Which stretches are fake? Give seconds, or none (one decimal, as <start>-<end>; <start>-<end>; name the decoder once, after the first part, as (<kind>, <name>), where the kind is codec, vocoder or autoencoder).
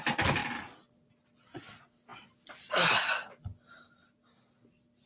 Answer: none